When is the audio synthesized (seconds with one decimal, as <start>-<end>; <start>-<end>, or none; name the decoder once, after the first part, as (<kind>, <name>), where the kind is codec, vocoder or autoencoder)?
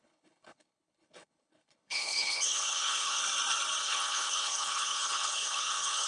0.0-3.2 (codec, HILCodec); 3.8-6.1